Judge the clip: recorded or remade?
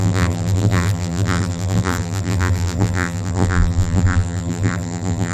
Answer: remade